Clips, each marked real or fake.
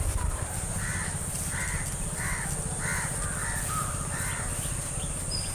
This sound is real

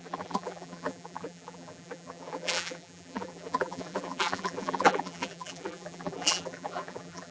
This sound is fake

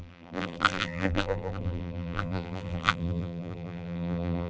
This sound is fake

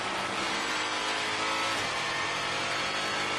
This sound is real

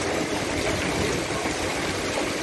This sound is real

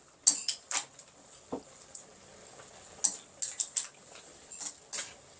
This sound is real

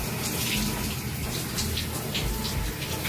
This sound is real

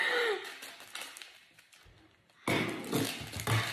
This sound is real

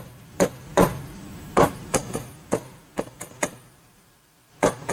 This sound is fake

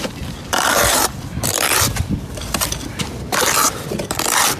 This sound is fake